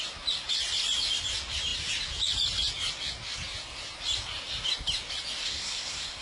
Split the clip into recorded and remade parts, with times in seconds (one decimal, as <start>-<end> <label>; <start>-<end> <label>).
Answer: 0.0-5.4 recorded; 5.4-6.2 remade